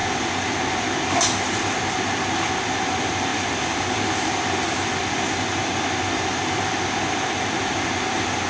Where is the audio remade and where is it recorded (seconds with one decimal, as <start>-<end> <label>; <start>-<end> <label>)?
0.0-3.3 recorded; 3.3-4.4 remade; 4.4-8.5 recorded